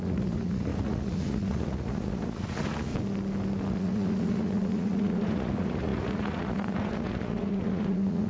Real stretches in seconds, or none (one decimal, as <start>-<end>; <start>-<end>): 2.9-3.7